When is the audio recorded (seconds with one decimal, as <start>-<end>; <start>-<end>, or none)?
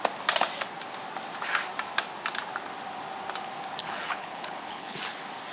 0.0-3.8; 5.0-5.5